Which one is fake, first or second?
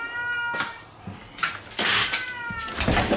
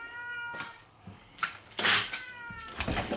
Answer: second